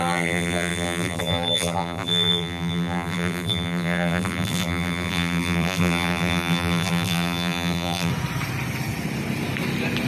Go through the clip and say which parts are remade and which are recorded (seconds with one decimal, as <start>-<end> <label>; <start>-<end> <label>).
0.0-8.1 remade; 8.1-10.1 recorded